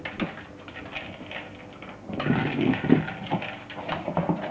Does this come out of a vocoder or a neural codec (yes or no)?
no